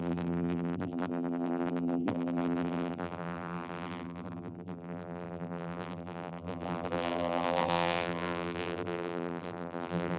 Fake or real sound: fake